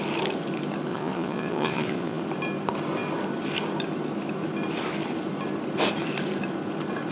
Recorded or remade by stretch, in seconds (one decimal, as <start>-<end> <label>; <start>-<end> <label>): 0.0-0.9 recorded; 0.9-2.2 remade; 2.2-7.1 recorded